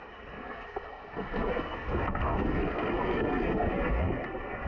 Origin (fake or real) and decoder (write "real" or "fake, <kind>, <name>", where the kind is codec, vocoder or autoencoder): fake, codec, SNAC